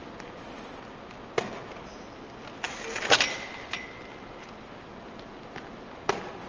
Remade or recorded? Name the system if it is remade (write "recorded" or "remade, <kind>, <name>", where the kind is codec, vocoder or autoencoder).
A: recorded